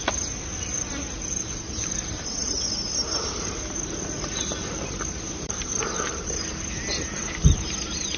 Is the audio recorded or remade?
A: remade